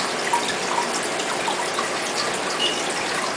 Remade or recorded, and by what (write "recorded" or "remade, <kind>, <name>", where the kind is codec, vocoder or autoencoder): recorded